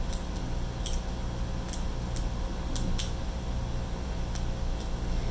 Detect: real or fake real